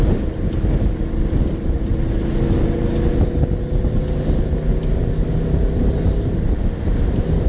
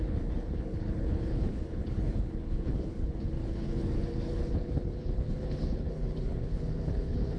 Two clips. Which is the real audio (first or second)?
first